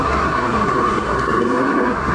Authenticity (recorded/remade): remade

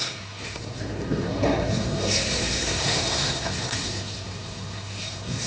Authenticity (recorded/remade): remade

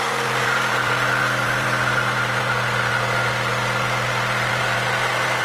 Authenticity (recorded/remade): recorded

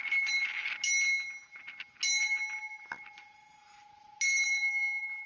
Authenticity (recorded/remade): recorded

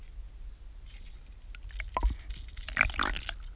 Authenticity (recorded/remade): recorded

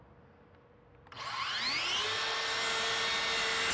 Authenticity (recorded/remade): recorded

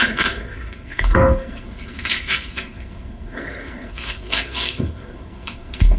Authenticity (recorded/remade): remade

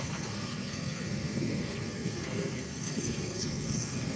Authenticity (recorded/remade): remade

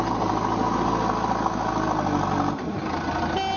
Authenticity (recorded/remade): recorded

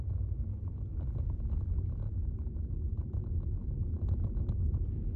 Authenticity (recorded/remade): recorded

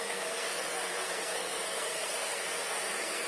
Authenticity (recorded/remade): remade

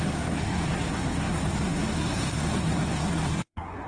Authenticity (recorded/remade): remade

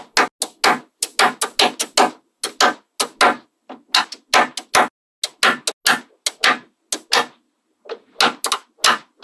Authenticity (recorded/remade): recorded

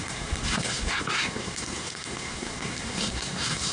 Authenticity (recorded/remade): remade